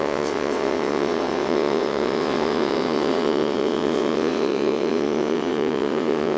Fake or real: fake